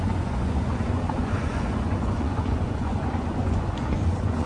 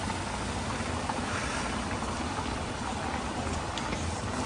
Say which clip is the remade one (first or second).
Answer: first